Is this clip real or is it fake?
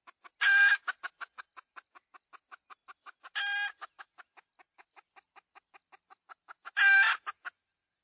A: real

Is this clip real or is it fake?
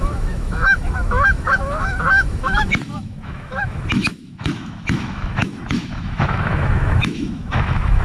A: fake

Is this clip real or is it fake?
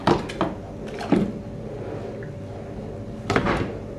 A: real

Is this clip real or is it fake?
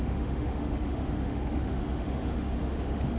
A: fake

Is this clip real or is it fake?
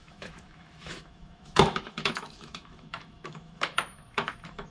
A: fake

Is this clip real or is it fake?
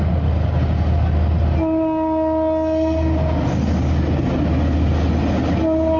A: real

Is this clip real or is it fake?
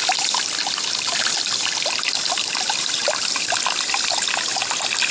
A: real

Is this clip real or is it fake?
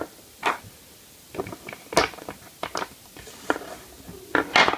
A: real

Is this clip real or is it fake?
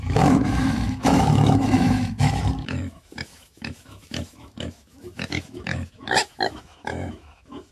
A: fake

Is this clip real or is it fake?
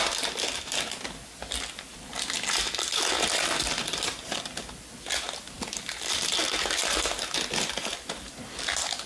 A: real